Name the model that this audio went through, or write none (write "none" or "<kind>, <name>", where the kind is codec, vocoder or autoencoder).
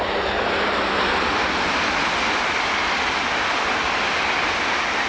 none